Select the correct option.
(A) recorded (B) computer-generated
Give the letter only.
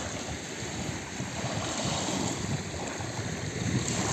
A